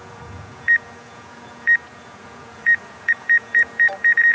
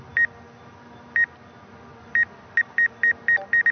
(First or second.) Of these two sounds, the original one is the second